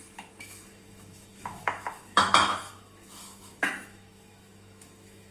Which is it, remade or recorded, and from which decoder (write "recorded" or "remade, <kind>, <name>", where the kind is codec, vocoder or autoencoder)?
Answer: remade, autoencoder, DAC-VAE